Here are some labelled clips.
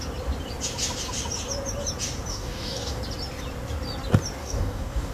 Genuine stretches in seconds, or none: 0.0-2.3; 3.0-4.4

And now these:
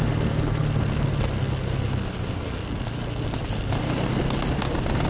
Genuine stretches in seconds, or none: 0.0-5.1

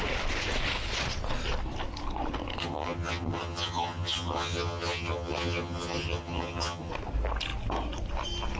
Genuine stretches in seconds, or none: 0.0-2.6; 6.9-8.6